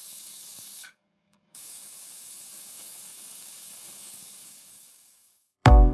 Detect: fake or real fake